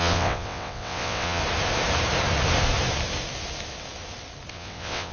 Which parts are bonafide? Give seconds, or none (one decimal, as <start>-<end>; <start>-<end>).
1.4-4.5